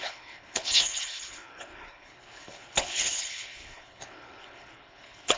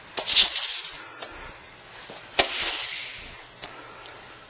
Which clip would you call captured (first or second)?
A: second